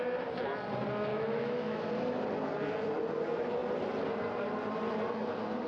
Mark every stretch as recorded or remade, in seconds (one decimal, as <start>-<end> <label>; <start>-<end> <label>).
0.0-1.1 recorded; 1.1-1.9 remade; 1.9-5.7 recorded